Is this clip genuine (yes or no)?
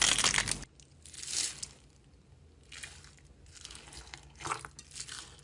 yes